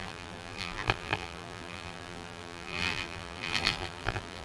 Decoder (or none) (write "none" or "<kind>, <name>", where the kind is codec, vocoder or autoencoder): vocoder, BigVGAN v2